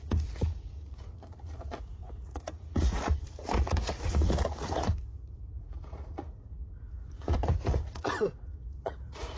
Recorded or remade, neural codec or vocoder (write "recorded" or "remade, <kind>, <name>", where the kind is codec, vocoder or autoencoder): remade, vocoder, Vocos